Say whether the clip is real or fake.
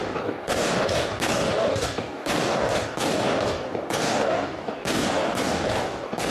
fake